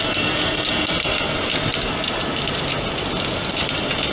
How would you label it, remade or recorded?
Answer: recorded